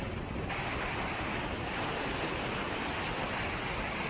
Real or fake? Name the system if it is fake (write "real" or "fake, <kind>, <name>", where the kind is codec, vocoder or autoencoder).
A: real